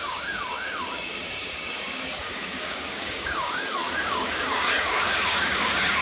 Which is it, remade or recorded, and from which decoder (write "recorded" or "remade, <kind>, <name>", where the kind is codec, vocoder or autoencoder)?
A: remade, codec, DAC